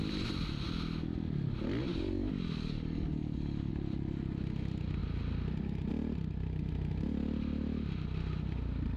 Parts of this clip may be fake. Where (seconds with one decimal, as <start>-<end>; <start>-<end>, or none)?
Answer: 1.9-3.7